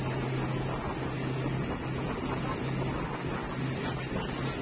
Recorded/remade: recorded